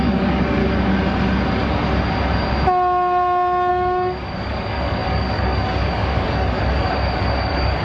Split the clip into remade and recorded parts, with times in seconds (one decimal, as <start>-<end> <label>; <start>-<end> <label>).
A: 0.0-0.6 remade; 0.6-3.7 recorded; 3.7-7.8 remade